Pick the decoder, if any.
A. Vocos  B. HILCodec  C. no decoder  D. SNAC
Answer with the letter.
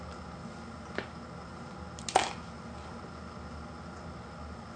C